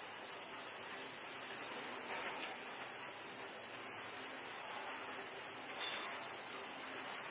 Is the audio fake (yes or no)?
no